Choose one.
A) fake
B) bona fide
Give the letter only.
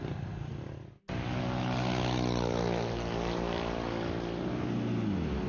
B